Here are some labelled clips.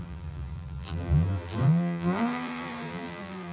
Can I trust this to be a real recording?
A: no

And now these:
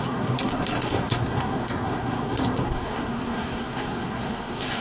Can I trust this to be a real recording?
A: no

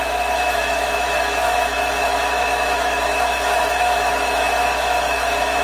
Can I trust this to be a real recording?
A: no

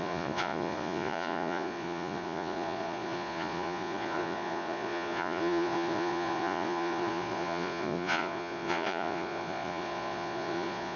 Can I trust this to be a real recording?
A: no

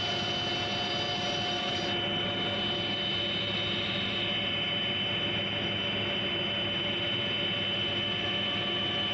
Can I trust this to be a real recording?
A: yes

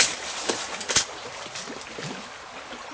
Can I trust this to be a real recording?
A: yes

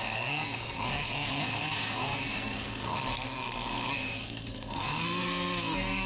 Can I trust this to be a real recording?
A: no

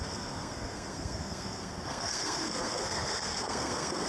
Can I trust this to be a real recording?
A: no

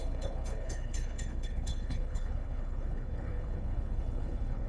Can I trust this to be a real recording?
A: no